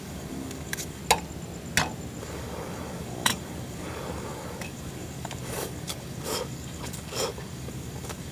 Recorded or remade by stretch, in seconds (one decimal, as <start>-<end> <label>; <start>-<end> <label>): 0.0-1.0 remade; 1.0-2.2 recorded; 2.2-8.3 remade